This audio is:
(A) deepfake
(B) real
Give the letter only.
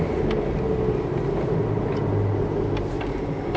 B